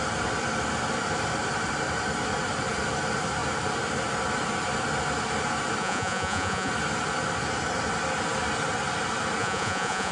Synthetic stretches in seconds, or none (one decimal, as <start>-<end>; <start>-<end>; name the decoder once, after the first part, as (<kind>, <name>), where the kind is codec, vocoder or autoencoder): 5.8-6.7 (vocoder, Vocos); 9.4-10.1